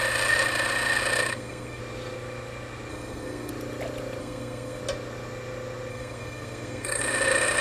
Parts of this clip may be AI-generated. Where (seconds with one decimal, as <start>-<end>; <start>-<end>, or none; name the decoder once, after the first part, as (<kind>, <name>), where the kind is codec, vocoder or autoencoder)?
1.3-1.8 (codec, SNAC); 2.9-3.5; 4.2-4.8; 5.9-7.0